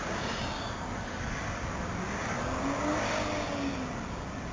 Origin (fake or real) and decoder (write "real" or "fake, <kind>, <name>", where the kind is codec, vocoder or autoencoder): real